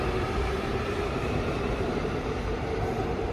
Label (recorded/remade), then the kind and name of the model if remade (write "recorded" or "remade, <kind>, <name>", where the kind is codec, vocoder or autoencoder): remade, vocoder, BigVGAN v2